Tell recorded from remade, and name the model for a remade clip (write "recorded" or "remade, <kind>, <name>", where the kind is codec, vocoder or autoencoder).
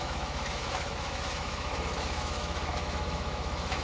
remade, autoencoder, DAC-VAE